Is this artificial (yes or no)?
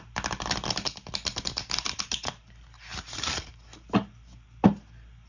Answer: no